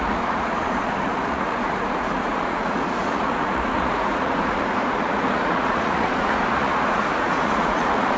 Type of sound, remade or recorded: remade